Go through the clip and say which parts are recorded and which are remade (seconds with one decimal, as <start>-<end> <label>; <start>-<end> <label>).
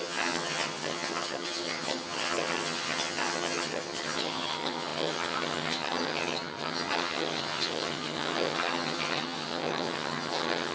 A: 0.0-10.7 remade